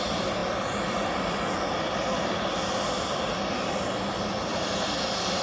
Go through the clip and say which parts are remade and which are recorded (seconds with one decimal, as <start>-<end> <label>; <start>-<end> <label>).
0.0-4.5 recorded; 4.5-5.4 remade